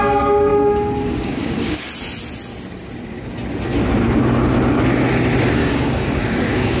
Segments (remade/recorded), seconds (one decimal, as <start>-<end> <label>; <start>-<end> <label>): 0.0-0.5 recorded; 0.5-1.9 remade; 1.9-5.6 recorded; 5.6-6.8 remade